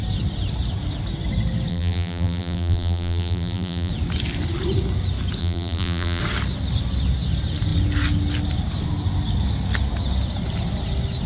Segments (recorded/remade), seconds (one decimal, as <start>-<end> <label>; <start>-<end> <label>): 0.0-1.7 recorded; 1.7-3.9 remade; 3.9-5.4 recorded; 5.4-6.2 remade; 6.2-11.3 recorded